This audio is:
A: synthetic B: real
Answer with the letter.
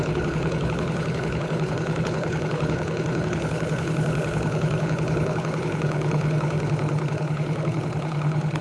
A